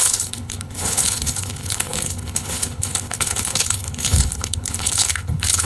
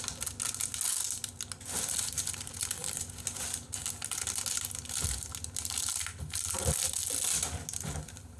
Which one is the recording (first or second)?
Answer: second